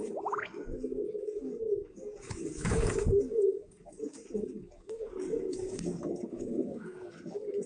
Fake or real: fake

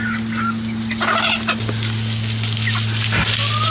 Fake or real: real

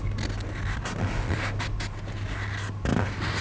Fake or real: real